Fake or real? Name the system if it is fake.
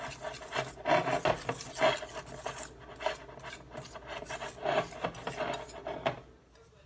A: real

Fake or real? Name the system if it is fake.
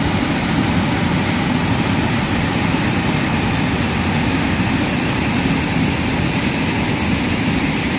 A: real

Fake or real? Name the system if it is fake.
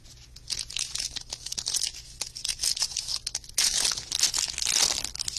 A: real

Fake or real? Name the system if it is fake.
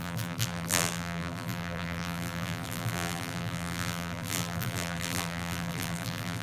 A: fake, vocoder, BigVGAN v2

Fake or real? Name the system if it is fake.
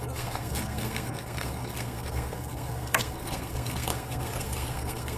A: fake, codec, SNAC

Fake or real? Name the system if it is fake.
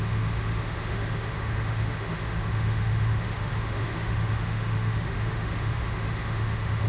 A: fake, autoencoder, DAC-VAE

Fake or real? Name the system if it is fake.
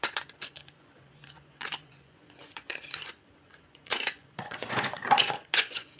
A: fake, vocoder, Vocos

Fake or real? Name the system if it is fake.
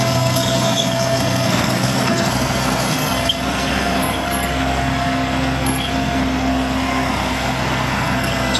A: fake, codec, SNAC